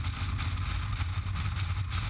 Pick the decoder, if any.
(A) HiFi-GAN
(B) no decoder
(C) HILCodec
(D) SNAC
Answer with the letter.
B